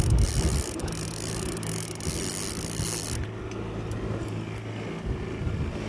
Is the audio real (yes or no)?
yes